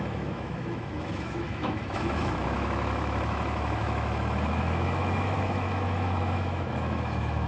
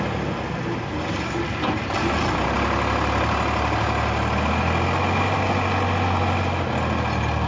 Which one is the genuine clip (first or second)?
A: second